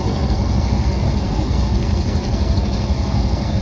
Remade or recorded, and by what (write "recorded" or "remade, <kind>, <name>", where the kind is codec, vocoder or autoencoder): remade, codec, SNAC